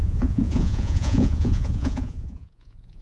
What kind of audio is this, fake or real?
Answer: fake